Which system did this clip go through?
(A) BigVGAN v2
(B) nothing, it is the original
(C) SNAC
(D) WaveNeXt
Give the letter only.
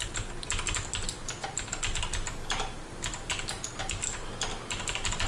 B